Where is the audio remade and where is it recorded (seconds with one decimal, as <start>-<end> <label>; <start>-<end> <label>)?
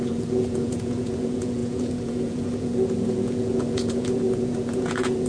0.0-5.3 remade